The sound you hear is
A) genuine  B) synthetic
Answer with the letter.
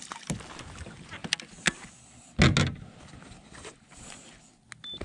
A